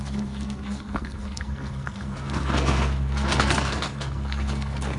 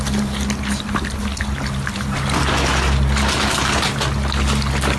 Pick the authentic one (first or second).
second